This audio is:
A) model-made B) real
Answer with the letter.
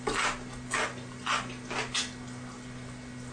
B